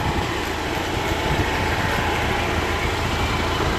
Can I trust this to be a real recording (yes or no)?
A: yes